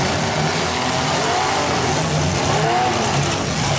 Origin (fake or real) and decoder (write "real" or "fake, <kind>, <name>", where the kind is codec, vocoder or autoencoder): real